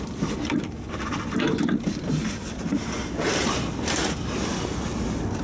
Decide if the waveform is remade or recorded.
recorded